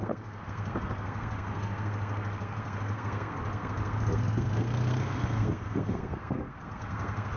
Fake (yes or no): yes